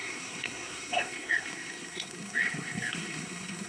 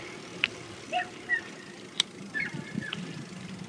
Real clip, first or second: second